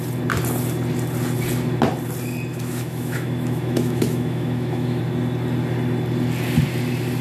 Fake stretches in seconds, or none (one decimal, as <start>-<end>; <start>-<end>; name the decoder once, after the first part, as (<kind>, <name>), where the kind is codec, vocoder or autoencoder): 2.5-5.0 (autoencoder, DAC-VAE)